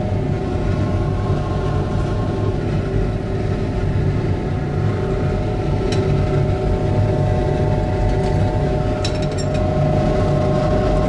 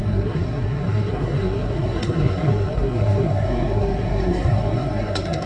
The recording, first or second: first